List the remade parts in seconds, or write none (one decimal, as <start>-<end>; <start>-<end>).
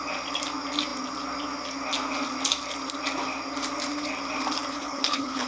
4.7-5.5